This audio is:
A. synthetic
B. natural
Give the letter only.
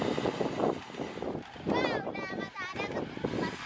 B